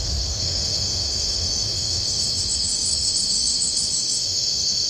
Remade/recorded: remade